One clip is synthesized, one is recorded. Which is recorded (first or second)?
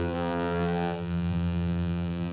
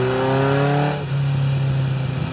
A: second